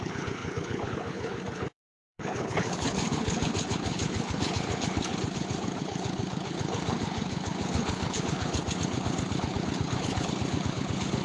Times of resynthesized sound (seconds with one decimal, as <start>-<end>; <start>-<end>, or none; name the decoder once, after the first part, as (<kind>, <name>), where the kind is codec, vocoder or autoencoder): 0.0-11.2 (codec, HILCodec)